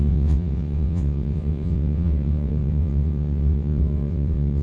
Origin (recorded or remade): remade